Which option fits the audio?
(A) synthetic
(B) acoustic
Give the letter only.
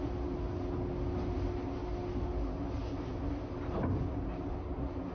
B